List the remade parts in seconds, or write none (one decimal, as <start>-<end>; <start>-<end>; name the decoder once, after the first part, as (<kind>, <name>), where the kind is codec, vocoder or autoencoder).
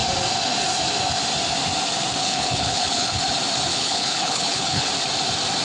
2.2-3.2 (codec, HILCodec); 3.7-4.9